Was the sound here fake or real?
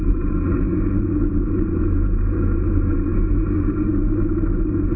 fake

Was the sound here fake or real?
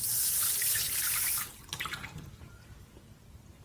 fake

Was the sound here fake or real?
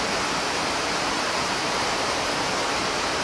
fake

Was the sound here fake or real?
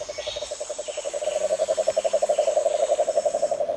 real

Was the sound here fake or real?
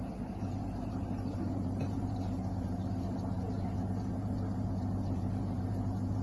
fake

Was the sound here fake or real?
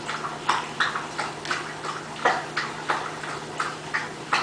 real